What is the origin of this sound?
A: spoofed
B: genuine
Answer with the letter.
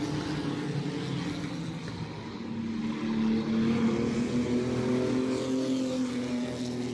B